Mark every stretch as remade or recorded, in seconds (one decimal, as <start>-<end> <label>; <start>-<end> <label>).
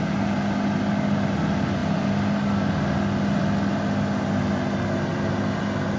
0.0-6.0 recorded